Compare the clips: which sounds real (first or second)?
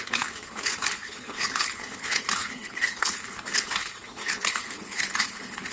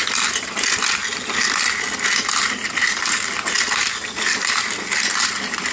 second